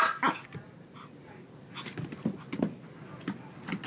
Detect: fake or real real